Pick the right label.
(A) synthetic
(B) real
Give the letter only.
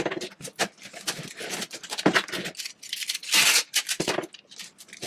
B